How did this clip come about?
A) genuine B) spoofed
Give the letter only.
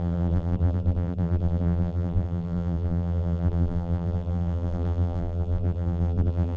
B